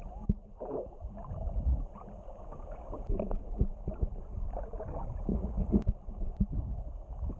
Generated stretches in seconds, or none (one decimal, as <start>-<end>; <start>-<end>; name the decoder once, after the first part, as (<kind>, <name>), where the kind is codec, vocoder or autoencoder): 5.3-5.8 (vocoder, Vocos)